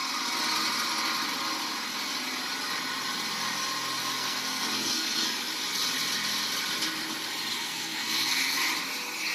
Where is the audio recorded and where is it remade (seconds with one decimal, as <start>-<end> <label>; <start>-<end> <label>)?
0.0-4.0 recorded; 4.0-5.5 remade; 5.5-7.5 recorded; 7.5-8.7 remade; 8.7-9.3 recorded